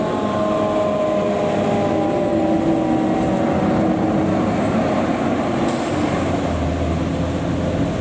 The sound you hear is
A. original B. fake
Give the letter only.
A